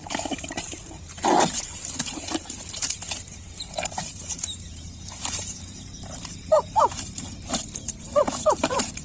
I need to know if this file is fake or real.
fake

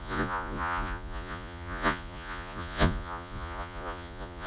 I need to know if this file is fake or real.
fake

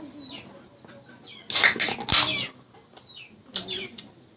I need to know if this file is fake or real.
real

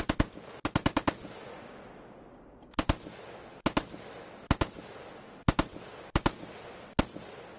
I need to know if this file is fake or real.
real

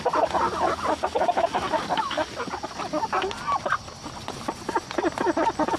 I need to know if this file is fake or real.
real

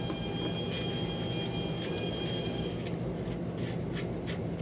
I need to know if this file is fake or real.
real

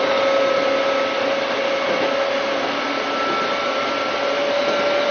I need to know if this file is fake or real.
real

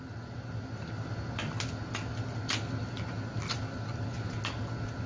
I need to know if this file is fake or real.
real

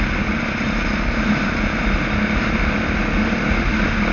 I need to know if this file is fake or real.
real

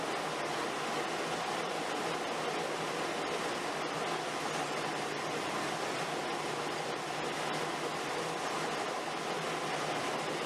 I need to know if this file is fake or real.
real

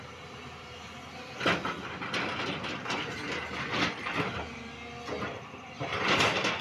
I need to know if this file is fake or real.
real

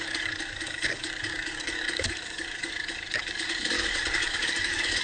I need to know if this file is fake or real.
fake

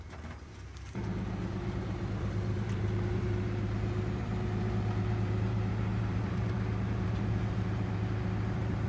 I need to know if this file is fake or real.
fake